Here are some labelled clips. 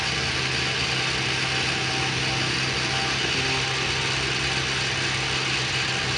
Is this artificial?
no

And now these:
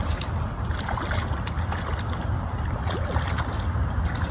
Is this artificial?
no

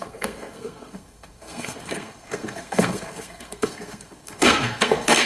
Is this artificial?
yes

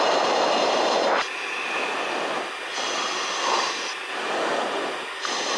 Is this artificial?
no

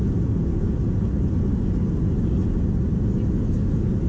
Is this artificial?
no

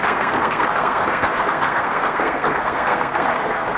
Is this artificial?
yes